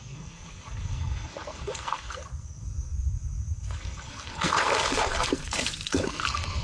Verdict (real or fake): fake